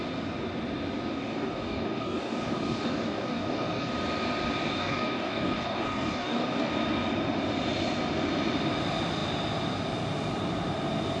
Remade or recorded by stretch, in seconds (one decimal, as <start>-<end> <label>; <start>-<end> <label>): 0.0-1.1 recorded; 1.1-3.9 remade; 3.9-4.7 recorded; 4.7-6.7 remade; 6.7-11.2 recorded